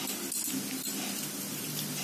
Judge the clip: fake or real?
real